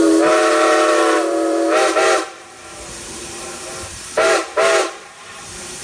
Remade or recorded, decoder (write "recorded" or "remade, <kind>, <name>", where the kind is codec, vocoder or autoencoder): remade, vocoder, BigVGAN v2